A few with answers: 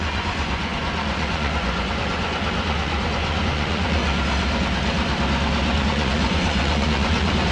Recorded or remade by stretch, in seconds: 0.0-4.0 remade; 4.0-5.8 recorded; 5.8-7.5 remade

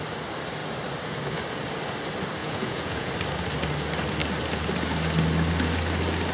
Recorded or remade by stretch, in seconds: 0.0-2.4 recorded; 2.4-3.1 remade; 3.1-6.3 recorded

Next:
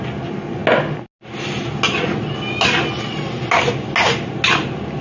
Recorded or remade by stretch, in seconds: 0.0-5.0 recorded

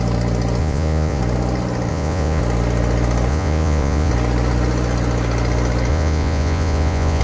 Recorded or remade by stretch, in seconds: 0.0-0.6 recorded; 0.6-1.2 remade; 1.2-1.9 recorded; 1.9-2.4 remade; 2.4-3.3 recorded; 3.3-4.1 remade; 4.1-5.9 recorded; 5.9-7.2 remade

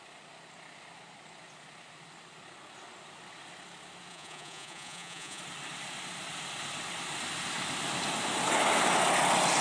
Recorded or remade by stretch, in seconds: 0.0-4.1 recorded; 4.1-5.4 remade; 5.4-9.6 recorded